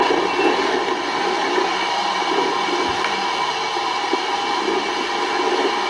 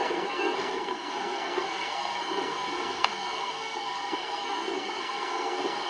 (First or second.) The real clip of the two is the first